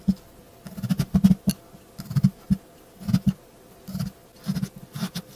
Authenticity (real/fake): real